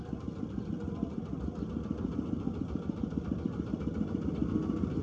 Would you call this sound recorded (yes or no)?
yes